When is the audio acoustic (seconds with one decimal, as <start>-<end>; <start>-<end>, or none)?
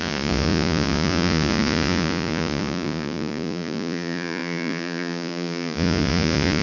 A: none